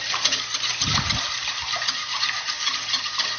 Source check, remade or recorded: recorded